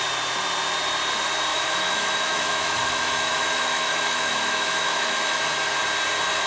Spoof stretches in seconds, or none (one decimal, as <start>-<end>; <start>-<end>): 1.5-5.4